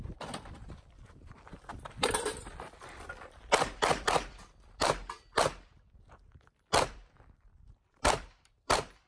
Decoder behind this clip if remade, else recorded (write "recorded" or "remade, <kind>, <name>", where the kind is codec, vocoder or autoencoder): remade, vocoder, BigVGAN v2